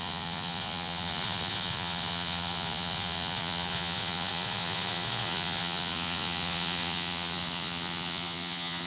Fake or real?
fake